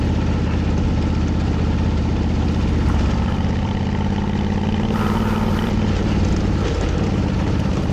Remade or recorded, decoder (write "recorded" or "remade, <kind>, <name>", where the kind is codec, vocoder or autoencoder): recorded